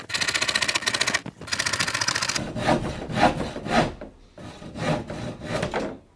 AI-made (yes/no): no